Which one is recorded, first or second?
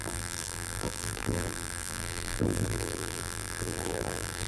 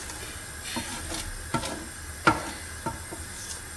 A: second